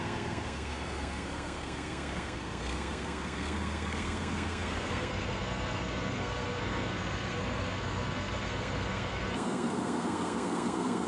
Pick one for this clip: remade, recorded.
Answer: remade